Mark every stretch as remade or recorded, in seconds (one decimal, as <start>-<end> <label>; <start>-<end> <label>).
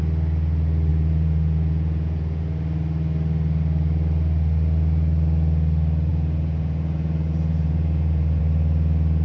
0.0-0.9 recorded; 0.9-2.4 remade; 2.4-6.1 recorded; 6.1-8.4 remade; 8.4-9.2 recorded